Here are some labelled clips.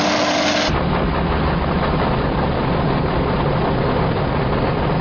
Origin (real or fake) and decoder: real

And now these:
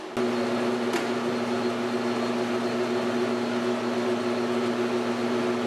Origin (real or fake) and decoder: real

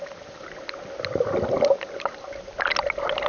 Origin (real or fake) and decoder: real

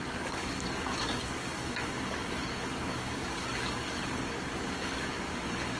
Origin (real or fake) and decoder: fake, codec, DAC